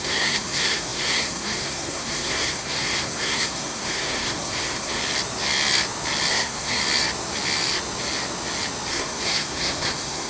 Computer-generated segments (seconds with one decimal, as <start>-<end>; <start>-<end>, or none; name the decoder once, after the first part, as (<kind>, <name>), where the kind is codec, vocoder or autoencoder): 0.0-5.0 (codec, SNAC); 6.3-6.8; 8.9-10.3